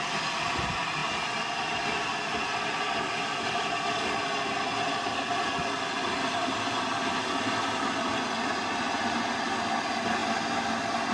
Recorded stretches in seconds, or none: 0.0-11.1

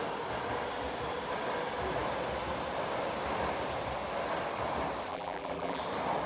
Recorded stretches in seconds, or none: 0.0-5.1; 5.8-6.3